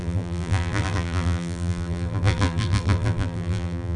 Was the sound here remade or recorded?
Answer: remade